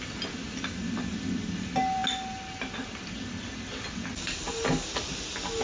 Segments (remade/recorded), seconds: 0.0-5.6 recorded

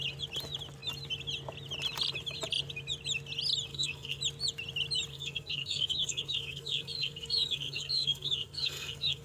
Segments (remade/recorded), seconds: 0.0-3.7 recorded; 3.7-4.2 remade; 4.2-5.1 recorded; 5.1-9.2 remade

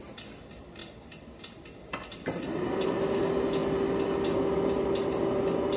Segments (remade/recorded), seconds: 0.0-5.8 recorded